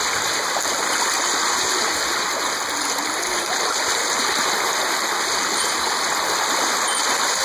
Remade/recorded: recorded